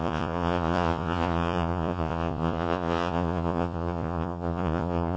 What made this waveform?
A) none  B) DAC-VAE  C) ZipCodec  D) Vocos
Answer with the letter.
D